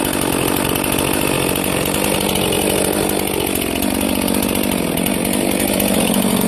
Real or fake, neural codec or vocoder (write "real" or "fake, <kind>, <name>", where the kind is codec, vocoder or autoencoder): real